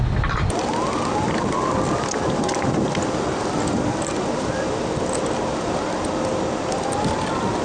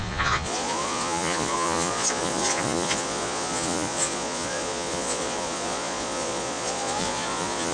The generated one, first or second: second